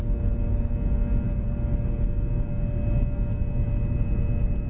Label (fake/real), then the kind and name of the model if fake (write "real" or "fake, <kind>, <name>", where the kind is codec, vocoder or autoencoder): real